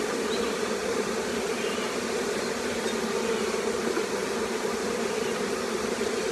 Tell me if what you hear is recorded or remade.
recorded